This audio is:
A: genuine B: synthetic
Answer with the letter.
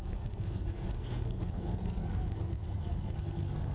B